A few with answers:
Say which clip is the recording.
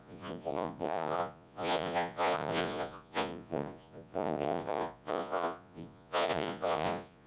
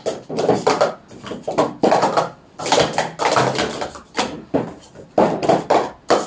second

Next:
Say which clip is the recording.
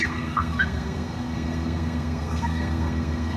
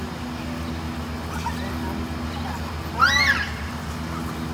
second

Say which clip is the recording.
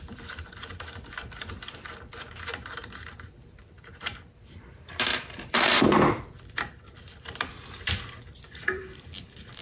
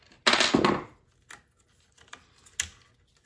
second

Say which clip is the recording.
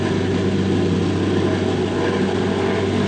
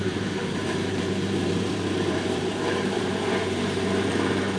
first